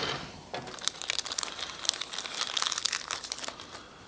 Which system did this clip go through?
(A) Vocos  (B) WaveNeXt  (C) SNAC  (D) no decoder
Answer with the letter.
D